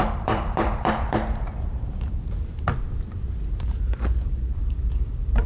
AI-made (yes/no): yes